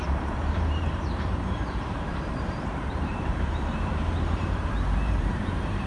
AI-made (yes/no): yes